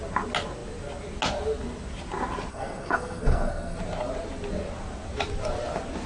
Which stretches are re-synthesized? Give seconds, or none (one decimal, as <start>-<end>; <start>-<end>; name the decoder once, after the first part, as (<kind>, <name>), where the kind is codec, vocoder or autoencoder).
2.5-3.8 (codec, SNAC)